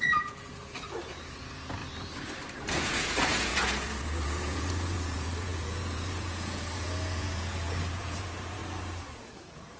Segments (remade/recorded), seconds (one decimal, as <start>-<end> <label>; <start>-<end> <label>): 0.0-1.8 remade; 1.8-2.7 recorded; 2.7-8.6 remade; 8.6-9.1 recorded; 9.1-9.8 remade